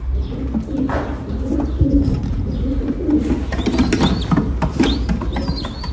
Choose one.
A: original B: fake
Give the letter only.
A